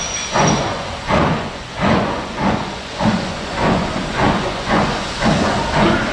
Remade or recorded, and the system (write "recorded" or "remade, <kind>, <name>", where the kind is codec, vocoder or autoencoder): remade, vocoder, Vocos